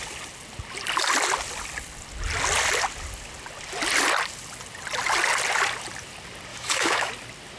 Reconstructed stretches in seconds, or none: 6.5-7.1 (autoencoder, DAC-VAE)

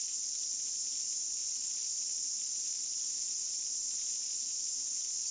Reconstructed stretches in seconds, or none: none

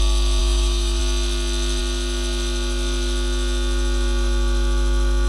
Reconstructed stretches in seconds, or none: 0.4-1.0 (autoencoder, DAC-VAE)

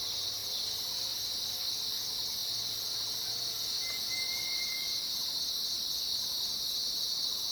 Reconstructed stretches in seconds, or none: none

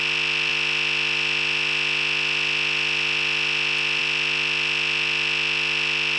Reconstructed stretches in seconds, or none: none